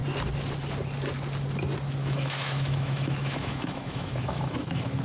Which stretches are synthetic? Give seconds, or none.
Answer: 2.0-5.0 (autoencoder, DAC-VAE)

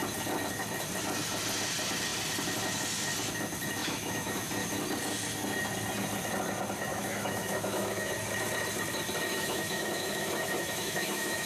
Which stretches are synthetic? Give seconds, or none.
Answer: 3.8-4.5 (autoencoder, DAC-VAE); 6.9-8.1; 9.3-11.5

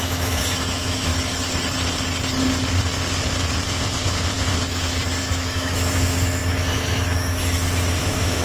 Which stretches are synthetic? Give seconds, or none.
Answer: 0.0-1.1 (autoencoder, DAC-VAE); 5.2-8.4

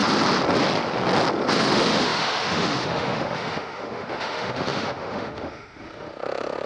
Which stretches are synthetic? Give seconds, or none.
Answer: 1.6-6.7 (autoencoder, DAC-VAE)

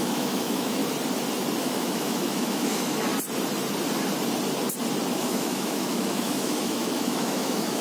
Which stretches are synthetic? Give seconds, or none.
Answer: 0.0-0.8 (autoencoder, DAC-VAE); 1.6-3.1; 5.1-7.8

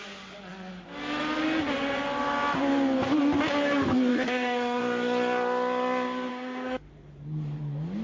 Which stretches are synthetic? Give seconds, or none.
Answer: 4.1-4.8 (autoencoder, DAC-VAE); 6.3-6.9

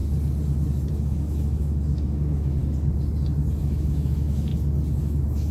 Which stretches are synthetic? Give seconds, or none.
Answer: 0.9-2.6 (autoencoder, DAC-VAE); 3.6-4.5; 5.0-5.5